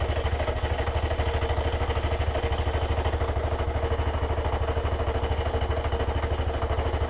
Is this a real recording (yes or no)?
yes